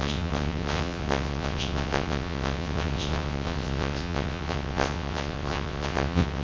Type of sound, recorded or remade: remade